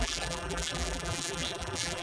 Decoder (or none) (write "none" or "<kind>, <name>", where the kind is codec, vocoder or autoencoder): vocoder, BigVGAN v2